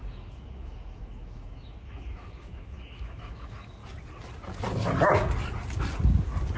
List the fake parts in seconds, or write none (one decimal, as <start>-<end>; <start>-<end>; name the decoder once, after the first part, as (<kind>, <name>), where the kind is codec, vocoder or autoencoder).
0.0-3.8 (autoencoder, DAC-VAE)